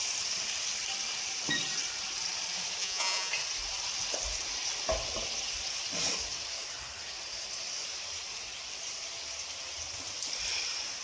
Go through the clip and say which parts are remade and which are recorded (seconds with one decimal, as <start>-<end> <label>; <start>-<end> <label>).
0.0-2.8 recorded; 2.8-3.3 remade; 3.3-11.0 recorded